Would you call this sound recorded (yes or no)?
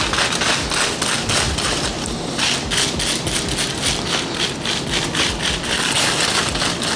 yes